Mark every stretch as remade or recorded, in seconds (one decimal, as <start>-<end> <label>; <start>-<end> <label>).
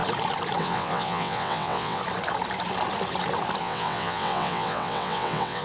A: 0.0-0.6 recorded; 0.6-2.0 remade; 2.0-3.6 recorded; 3.6-5.6 remade